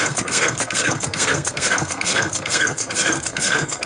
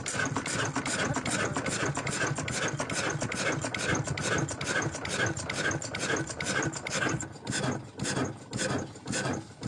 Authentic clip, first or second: second